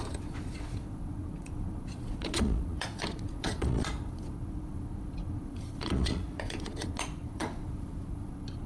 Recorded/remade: remade